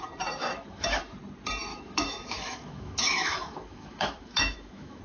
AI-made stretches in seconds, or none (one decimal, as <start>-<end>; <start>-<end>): 0.4-1.0; 1.7-5.0

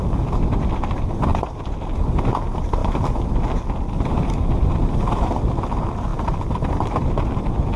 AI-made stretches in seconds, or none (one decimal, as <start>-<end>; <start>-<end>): none